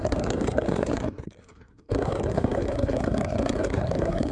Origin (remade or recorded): remade